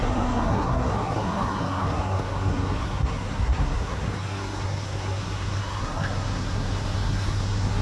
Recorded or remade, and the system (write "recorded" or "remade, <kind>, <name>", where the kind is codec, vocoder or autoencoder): remade, codec, SNAC